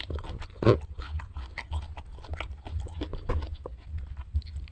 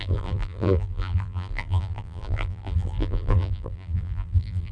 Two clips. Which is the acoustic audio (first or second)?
first